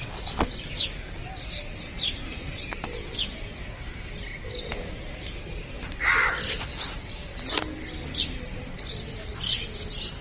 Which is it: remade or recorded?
recorded